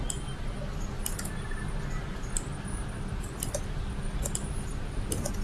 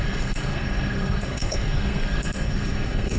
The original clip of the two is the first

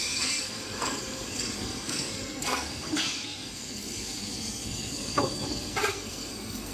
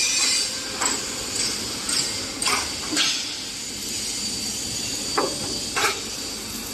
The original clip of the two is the second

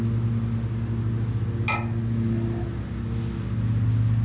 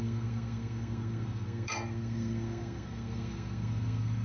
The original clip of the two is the first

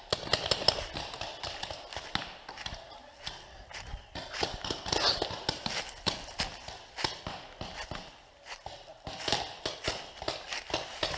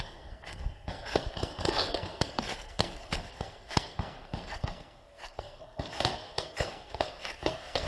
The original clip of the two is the first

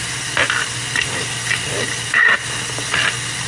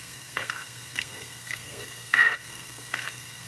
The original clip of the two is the first